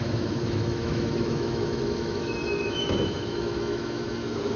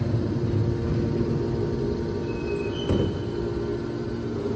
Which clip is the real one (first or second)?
second